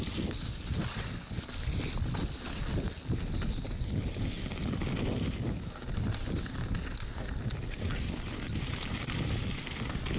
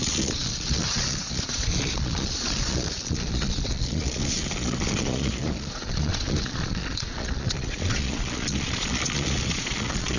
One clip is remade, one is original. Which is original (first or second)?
first